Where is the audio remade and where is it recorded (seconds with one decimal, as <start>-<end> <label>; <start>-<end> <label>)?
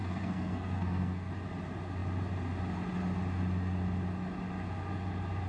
0.0-1.3 remade; 1.3-5.5 recorded